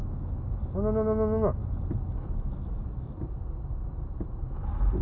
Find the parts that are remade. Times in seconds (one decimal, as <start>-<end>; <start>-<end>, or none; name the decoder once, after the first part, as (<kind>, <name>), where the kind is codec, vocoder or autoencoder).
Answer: none